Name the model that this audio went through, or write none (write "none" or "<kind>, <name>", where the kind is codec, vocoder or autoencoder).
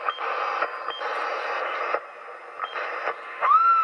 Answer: none